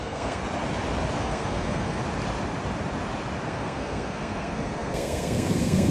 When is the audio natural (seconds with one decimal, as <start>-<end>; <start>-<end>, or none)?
0.4-1.2; 2.0-3.5